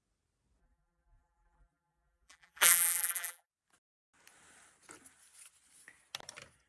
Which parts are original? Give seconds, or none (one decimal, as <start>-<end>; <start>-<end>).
0.0-0.6; 3.5-6.7